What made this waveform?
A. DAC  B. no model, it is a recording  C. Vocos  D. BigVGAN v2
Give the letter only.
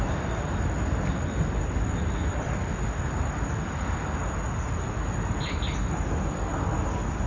B